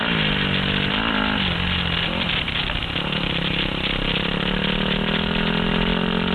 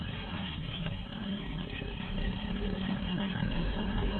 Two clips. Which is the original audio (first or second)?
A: first